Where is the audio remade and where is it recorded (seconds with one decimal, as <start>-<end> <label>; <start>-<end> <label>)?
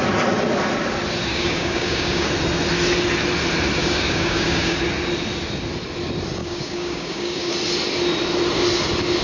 0.0-1.3 recorded; 1.3-2.3 remade; 2.3-3.8 recorded; 3.8-4.8 remade; 4.8-6.4 recorded; 6.4-7.5 remade; 7.5-9.2 recorded